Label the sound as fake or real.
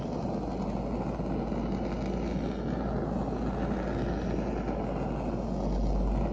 real